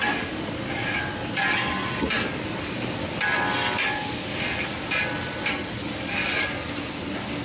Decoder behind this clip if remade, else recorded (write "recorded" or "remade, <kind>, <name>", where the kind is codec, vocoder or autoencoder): recorded